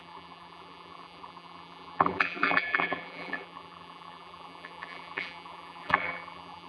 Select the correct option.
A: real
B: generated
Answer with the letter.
B